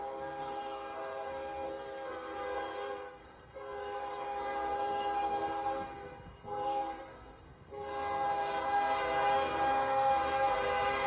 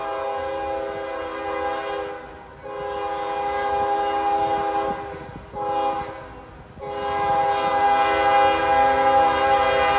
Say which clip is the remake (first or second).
first